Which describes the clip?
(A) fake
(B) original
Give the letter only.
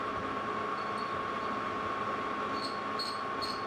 B